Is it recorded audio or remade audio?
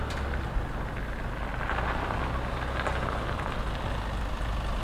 recorded